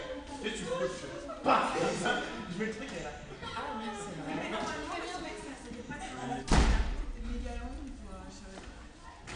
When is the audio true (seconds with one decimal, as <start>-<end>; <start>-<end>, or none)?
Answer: 0.0-9.4